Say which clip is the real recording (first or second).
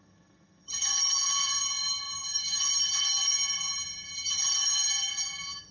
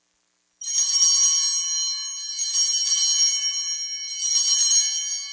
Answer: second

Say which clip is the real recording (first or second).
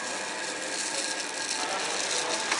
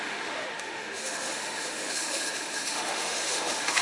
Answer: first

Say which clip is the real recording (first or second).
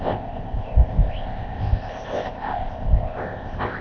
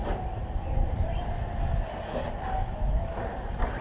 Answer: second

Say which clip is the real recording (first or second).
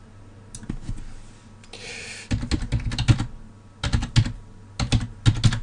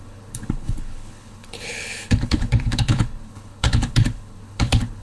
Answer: first